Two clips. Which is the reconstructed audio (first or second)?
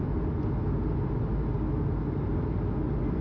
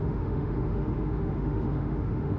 second